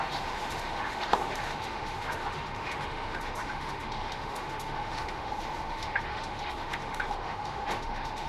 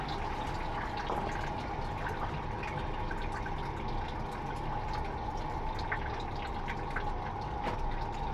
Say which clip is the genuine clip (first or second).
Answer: second